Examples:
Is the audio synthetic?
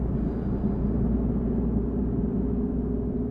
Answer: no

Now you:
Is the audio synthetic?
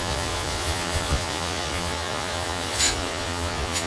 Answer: yes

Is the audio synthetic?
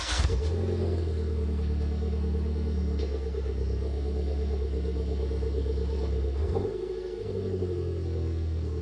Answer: yes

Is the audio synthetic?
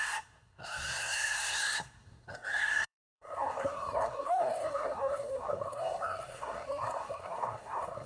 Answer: yes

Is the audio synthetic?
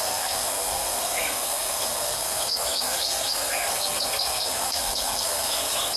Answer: yes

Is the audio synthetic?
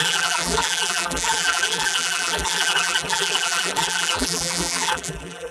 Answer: yes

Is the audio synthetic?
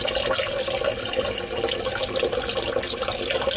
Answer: no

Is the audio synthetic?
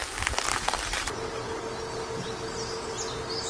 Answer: no